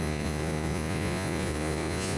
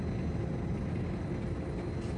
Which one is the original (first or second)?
second